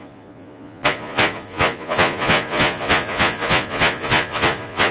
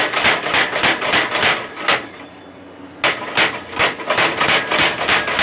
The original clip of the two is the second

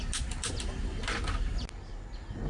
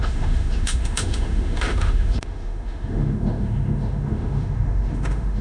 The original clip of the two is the first